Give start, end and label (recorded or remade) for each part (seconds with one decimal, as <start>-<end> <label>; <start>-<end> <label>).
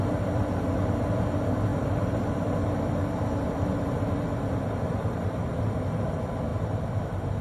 0.0-1.7 recorded; 1.7-5.6 remade; 5.6-7.4 recorded